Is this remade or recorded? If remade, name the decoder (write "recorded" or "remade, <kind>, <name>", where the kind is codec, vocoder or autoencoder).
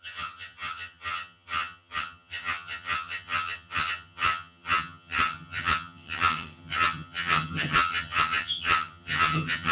remade, vocoder, HiFi-GAN